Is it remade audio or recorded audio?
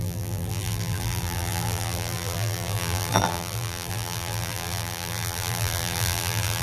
remade